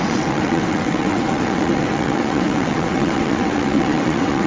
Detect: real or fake fake